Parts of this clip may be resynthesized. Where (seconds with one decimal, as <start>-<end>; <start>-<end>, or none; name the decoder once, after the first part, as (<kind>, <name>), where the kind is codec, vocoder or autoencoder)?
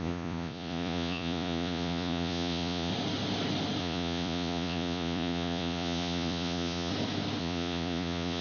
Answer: 0.0-2.9 (vocoder, Vocos); 3.8-6.9; 7.4-8.4